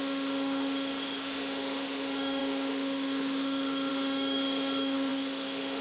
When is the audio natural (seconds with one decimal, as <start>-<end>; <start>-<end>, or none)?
none